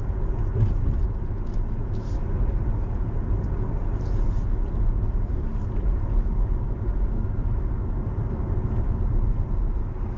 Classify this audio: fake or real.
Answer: real